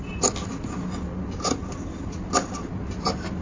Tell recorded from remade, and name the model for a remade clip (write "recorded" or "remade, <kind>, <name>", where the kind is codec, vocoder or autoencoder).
recorded